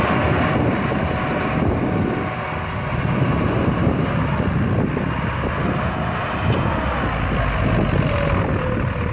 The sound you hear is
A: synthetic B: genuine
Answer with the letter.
B